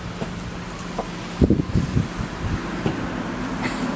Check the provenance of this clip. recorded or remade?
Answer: recorded